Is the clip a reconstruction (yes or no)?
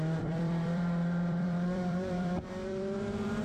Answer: yes